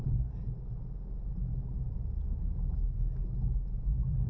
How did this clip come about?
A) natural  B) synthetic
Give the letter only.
A